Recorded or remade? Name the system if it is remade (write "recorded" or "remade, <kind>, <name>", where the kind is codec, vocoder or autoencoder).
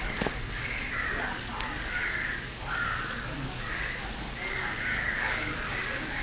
remade, codec, DAC